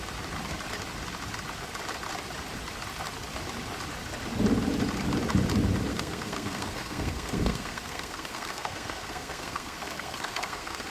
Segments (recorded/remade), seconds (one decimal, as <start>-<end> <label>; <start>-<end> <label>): 0.0-5.9 recorded; 5.9-10.9 remade